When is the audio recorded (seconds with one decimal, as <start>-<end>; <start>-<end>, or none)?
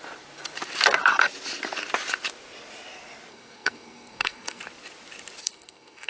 0.0-3.3; 4.6-5.4